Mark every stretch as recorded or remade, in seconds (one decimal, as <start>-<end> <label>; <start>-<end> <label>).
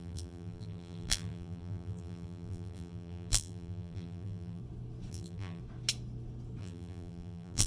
0.0-4.6 remade; 4.6-5.1 recorded; 5.1-5.6 remade; 5.6-6.6 recorded; 6.6-7.7 remade